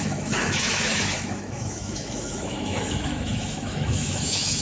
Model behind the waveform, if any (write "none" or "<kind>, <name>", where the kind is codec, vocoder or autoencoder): autoencoder, DAC-VAE